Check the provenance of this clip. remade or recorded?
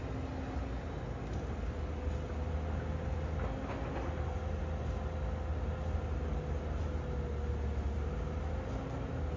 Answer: recorded